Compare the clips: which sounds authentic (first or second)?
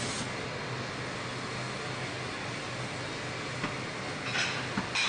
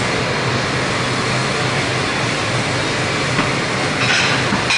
first